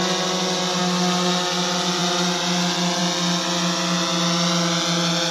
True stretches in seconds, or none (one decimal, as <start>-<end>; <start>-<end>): 0.0-5.3